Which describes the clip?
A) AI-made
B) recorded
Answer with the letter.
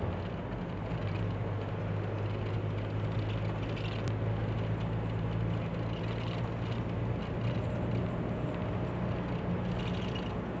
B